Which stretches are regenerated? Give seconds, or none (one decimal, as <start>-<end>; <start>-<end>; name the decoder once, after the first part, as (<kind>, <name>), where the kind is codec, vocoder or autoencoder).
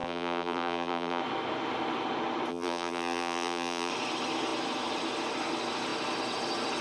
0.0-1.2 (vocoder, BigVGAN v2); 2.5-3.9